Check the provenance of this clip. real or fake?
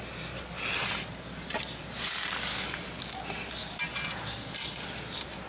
real